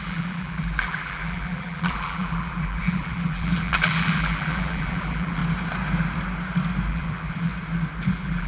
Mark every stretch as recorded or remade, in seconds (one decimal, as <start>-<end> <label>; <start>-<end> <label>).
0.0-5.4 remade; 5.4-6.9 recorded; 6.9-7.5 remade; 7.5-8.1 recorded; 8.1-8.5 remade